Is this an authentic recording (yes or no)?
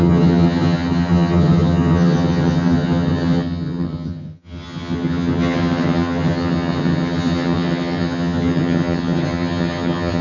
no